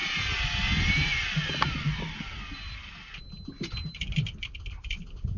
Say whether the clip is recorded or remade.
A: recorded